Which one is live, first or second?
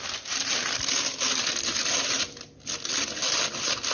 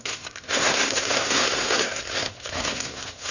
first